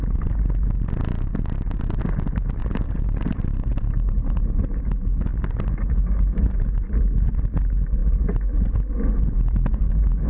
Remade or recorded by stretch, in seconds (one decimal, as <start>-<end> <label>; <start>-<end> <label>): 0.0-1.1 recorded; 1.1-2.0 remade; 2.0-2.6 recorded; 2.6-4.8 remade; 4.8-10.3 recorded